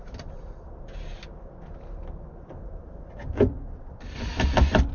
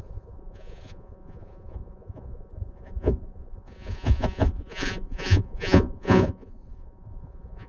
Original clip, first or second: first